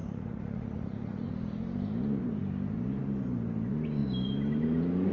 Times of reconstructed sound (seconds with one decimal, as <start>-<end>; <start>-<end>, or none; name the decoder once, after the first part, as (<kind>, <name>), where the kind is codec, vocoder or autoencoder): 0.0-1.3 (vocoder, Vocos)

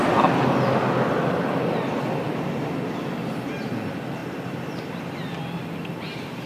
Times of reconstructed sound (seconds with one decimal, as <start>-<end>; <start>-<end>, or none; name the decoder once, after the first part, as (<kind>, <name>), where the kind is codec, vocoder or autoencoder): none

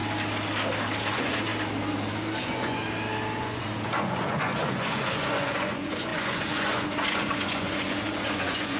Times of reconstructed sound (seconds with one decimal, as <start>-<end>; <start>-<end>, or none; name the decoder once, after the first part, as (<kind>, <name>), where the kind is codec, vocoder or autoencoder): 1.0-1.5 (vocoder, Vocos); 2.4-2.8; 3.4-8.8

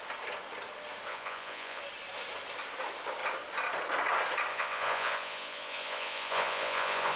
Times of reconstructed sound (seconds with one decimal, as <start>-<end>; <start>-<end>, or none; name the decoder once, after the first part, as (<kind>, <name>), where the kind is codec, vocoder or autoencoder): 1.1-1.8 (vocoder, Vocos); 4.5-7.2

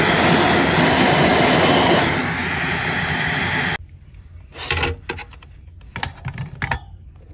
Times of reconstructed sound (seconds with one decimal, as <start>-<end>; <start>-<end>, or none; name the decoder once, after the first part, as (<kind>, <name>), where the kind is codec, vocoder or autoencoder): none

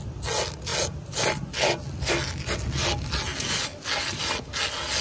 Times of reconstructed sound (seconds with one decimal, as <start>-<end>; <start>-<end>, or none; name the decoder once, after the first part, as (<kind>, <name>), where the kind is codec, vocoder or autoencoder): none

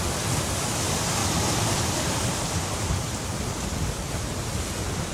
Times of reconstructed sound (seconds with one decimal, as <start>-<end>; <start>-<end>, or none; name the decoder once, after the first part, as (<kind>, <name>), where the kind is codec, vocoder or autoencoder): none

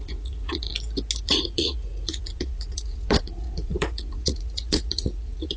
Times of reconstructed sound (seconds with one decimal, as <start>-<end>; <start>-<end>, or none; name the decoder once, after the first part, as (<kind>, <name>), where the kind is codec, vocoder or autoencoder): 0.0-0.7 (vocoder, Vocos); 1.2-5.6